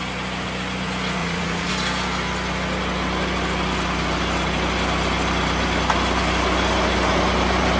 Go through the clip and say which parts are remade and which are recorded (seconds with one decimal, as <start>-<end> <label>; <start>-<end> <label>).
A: 0.0-1.2 recorded; 1.2-1.7 remade; 1.7-7.8 recorded